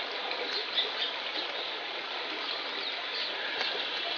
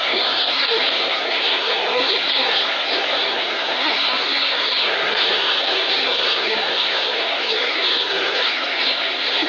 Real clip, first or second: first